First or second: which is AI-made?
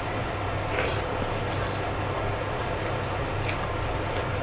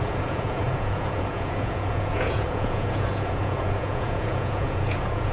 second